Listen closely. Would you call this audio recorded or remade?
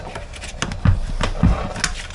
recorded